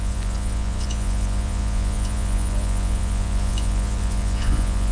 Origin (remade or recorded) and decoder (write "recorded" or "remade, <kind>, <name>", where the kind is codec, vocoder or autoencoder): remade, vocoder, Vocos